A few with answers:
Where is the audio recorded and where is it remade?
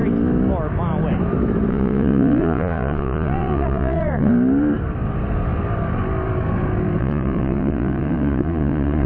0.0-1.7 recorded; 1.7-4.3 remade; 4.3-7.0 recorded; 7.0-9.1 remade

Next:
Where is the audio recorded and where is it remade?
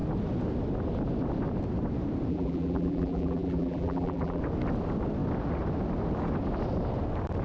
0.0-2.3 recorded; 2.3-4.4 remade; 4.4-7.4 recorded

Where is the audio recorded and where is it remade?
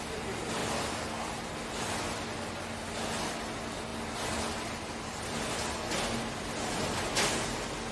0.0-7.9 recorded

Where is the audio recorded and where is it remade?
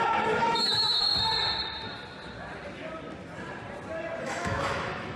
0.0-1.1 remade; 1.1-4.2 recorded; 4.2-5.2 remade